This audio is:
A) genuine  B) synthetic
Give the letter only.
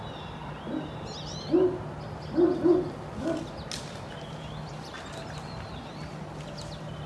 A